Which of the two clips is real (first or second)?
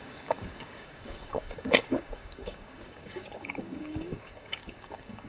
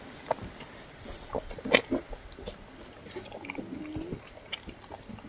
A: second